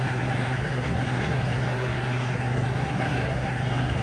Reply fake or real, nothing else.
fake